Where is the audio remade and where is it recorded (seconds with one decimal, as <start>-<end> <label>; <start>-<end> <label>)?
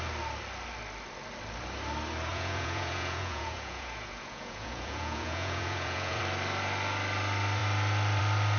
0.0-2.3 recorded; 2.3-6.2 remade; 6.2-8.6 recorded